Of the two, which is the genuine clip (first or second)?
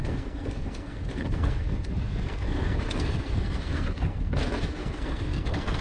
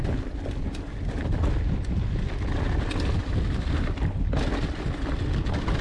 second